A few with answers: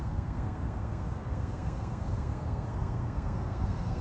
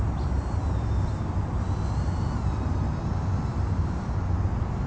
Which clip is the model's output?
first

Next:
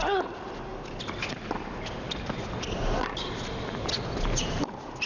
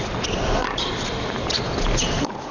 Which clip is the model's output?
second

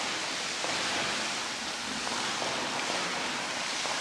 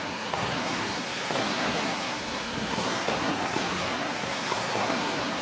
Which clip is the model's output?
second